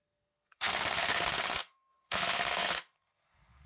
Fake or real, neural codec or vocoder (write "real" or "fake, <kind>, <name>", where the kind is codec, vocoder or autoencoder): fake, codec, SNAC